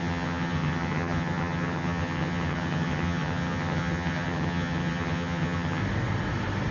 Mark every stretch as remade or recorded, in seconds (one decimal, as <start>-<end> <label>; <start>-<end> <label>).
0.0-5.8 remade; 5.8-6.7 recorded